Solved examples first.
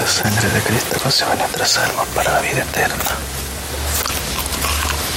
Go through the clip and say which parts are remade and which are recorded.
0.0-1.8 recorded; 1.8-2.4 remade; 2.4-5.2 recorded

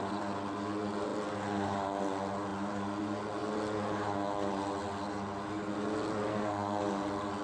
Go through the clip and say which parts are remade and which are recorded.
0.0-6.3 recorded; 6.3-6.8 remade; 6.8-7.4 recorded

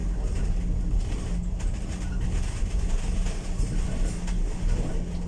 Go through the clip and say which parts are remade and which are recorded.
0.0-5.3 recorded

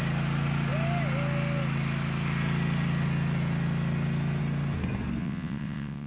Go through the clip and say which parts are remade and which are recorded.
0.0-5.2 recorded; 5.2-6.1 remade

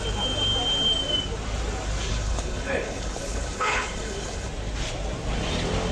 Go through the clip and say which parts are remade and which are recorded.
0.0-2.1 recorded; 2.1-4.5 remade; 4.5-5.9 recorded

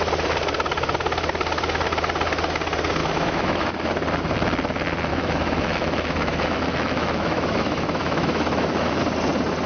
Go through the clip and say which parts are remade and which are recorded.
0.0-3.0 recorded; 3.0-3.7 remade; 3.7-5.1 recorded; 5.1-9.0 remade; 9.0-9.7 recorded

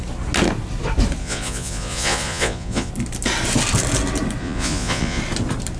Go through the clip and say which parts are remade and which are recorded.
0.0-1.2 recorded; 1.2-2.9 remade; 2.9-4.4 recorded; 4.4-5.2 remade; 5.2-5.8 recorded

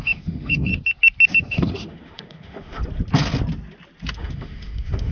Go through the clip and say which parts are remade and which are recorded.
0.0-0.7 remade; 0.7-1.3 recorded; 1.3-2.8 remade; 2.8-4.1 recorded; 4.1-5.1 remade